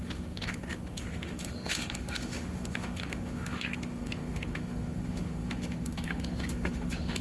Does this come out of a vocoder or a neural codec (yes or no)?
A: yes